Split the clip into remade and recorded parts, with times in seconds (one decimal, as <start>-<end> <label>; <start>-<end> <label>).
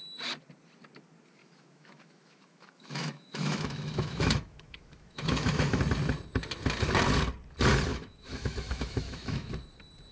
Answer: 0.0-1.4 recorded; 1.4-5.8 remade; 5.8-7.9 recorded; 7.9-9.5 remade; 9.5-10.1 recorded